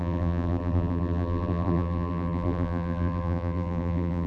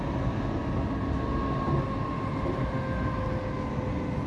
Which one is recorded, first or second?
second